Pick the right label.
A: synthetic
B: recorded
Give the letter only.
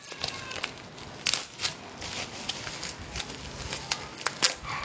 B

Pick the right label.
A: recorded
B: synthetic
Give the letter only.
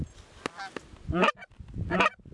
A